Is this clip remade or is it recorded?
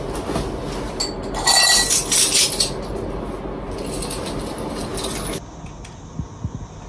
recorded